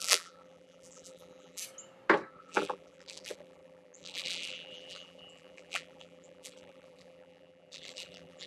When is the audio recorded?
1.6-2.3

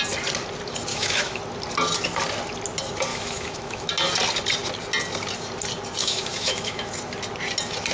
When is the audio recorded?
0.0-0.9; 1.4-3.1; 3.9-6.0; 6.9-7.9

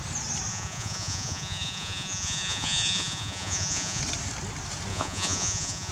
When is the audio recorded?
0.0-0.5; 4.0-4.9

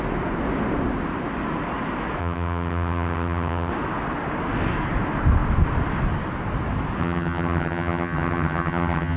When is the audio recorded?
0.0-2.2; 3.7-7.0

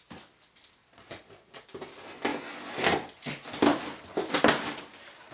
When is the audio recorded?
0.0-0.8; 1.6-5.3

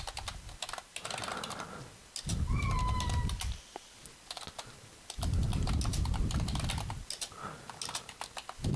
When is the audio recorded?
0.0-8.8

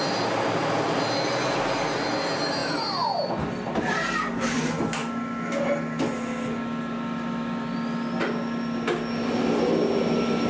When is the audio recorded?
0.0-10.5

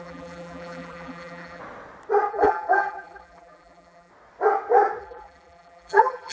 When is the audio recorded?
1.6-2.3; 4.1-5.0